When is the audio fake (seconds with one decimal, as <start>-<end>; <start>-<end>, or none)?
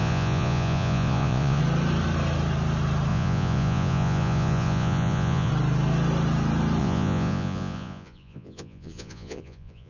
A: 0.0-1.6; 3.1-5.5; 6.8-9.9